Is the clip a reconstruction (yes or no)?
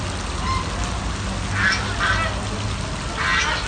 no